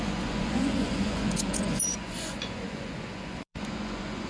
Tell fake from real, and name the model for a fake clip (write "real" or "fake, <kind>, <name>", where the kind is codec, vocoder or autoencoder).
fake, vocoder, Vocos